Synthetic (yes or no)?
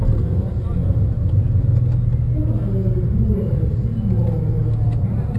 no